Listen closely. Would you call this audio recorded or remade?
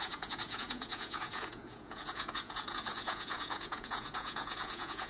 remade